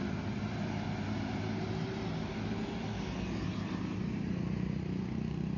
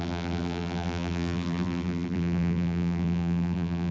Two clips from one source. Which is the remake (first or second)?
second